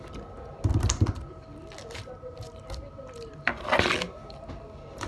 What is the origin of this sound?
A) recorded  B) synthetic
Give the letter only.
A